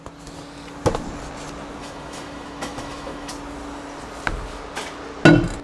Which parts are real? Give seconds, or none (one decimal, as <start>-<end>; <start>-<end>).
0.0-1.8; 3.3-5.6